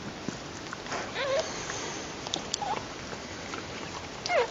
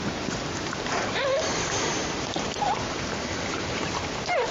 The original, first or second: first